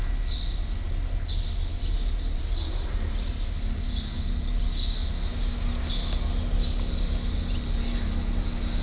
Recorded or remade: recorded